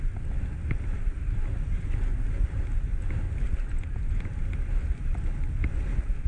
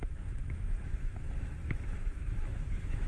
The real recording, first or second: first